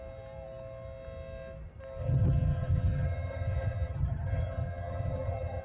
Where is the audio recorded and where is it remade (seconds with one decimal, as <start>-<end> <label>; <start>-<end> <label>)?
0.0-2.0 recorded; 2.0-5.6 remade